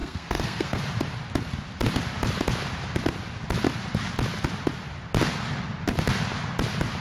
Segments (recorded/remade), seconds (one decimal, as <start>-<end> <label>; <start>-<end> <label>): 0.0-0.8 remade; 0.8-7.0 recorded